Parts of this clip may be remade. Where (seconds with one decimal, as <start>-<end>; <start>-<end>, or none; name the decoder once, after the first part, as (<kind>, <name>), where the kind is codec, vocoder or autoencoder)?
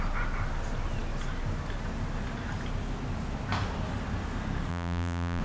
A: 4.7-5.4 (vocoder, BigVGAN v2)